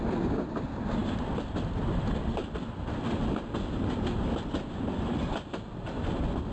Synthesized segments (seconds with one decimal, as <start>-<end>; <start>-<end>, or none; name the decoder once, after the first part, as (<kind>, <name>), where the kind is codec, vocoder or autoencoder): none